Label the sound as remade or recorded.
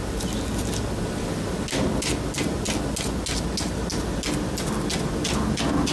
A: recorded